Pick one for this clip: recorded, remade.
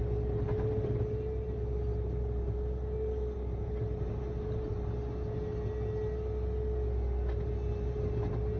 recorded